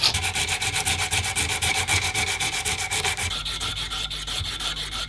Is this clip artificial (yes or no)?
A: no